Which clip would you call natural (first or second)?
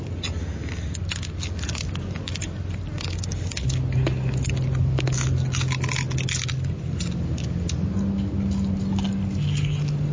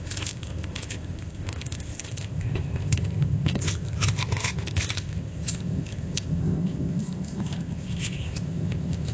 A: first